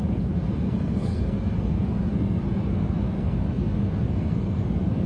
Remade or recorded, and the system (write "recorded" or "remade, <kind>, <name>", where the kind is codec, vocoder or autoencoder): remade, codec, SNAC